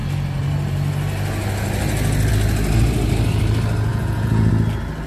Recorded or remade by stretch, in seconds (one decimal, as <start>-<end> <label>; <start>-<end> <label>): 0.0-3.9 recorded; 3.9-4.5 remade; 4.5-5.1 recorded